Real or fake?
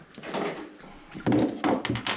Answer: real